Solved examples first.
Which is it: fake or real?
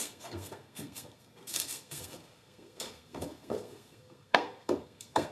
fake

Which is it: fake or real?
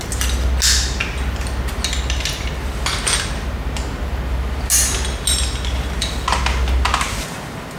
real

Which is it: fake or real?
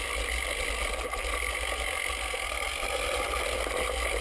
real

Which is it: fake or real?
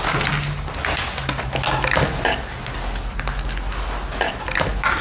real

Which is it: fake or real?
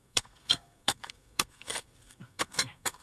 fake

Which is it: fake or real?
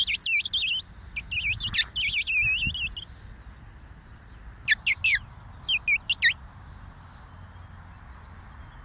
real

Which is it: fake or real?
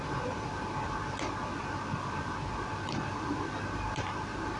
real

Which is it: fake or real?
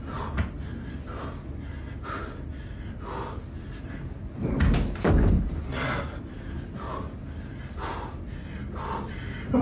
real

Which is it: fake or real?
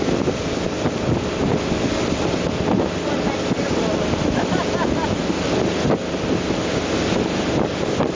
real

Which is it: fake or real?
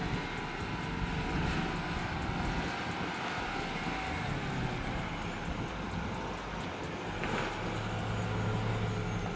real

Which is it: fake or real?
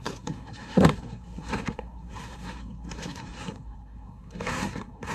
fake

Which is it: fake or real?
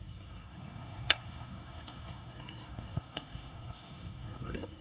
fake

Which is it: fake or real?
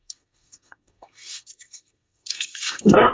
fake